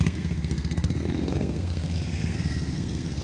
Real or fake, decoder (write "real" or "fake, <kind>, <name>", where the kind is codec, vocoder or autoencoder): fake, codec, SNAC